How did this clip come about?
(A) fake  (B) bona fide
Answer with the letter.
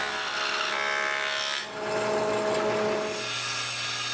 B